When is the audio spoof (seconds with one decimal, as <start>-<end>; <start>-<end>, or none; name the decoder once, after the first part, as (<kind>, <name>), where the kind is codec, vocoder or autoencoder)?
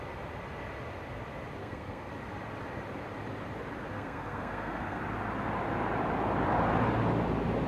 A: 1.6-2.1 (codec, SNAC); 3.9-5.0